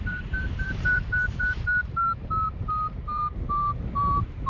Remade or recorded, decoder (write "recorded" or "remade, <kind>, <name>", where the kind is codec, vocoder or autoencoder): remade, vocoder, BigVGAN v2